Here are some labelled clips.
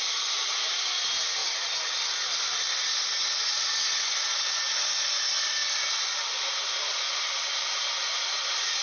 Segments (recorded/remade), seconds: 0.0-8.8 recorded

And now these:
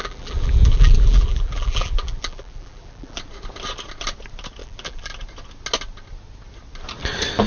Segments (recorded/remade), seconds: 0.0-3.2 remade; 3.2-4.6 recorded; 4.6-5.1 remade; 5.1-7.5 recorded

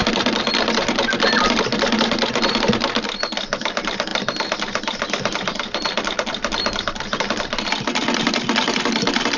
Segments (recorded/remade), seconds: 0.0-9.4 recorded